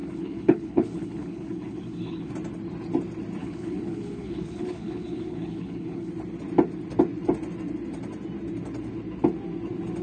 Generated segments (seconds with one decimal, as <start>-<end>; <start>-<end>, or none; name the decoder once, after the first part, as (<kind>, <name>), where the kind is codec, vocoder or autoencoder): 0.0-2.3 (codec, HILCodec); 3.4-6.1